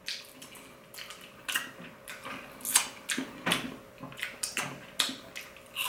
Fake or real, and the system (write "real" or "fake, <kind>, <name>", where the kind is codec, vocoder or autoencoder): real